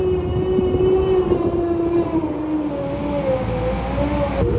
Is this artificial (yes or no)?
no